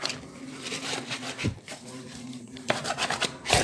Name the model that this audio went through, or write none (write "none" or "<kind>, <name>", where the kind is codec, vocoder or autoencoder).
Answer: vocoder, BigVGAN v2